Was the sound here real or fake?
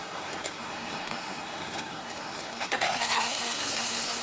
fake